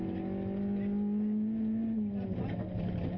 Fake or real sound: real